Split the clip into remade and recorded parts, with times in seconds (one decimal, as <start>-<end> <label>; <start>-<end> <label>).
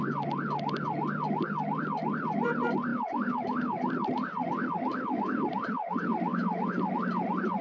0.0-2.9 recorded; 2.9-3.9 remade; 3.9-4.9 recorded; 4.9-5.5 remade; 5.5-6.3 recorded; 6.3-6.9 remade; 6.9-7.6 recorded